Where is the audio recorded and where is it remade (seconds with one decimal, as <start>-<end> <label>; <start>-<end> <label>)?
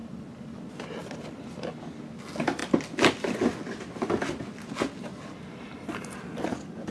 0.0-6.9 recorded